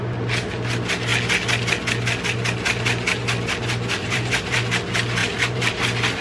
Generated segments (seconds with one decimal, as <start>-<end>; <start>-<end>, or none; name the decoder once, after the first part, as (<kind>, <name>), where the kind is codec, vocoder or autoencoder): 4.0-4.6 (vocoder, BigVGAN v2); 5.2-5.8